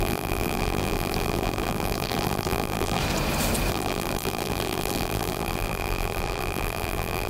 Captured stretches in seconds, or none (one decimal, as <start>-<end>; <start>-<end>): 3.0-3.7